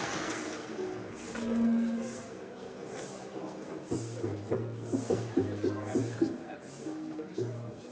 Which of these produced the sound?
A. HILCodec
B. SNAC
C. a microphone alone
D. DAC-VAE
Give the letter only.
B